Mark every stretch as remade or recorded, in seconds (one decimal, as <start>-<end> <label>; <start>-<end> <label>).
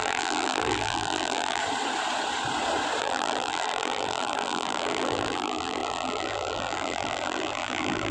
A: 0.0-1.6 remade; 1.6-3.0 recorded; 3.0-8.1 remade